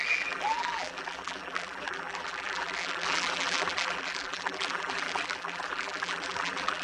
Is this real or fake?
fake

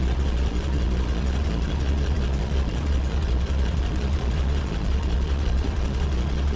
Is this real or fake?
fake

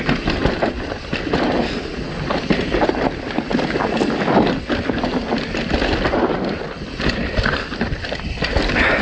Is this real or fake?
real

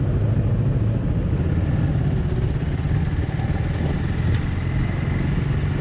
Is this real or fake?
real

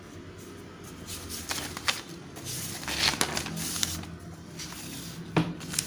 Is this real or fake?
real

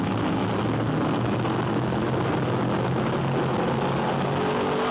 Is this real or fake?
real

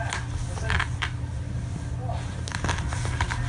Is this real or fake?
real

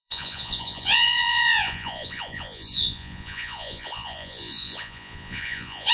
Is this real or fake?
fake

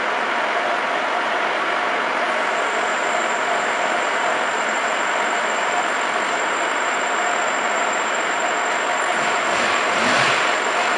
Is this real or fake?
fake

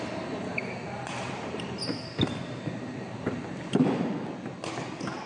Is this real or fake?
real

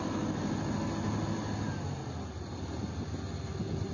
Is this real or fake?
real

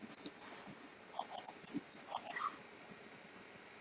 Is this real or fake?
real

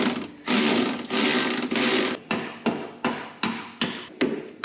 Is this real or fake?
real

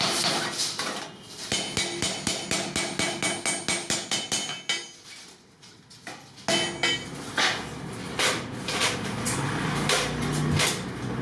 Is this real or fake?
real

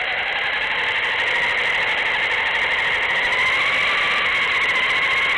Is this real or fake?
real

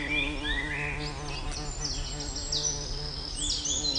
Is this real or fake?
real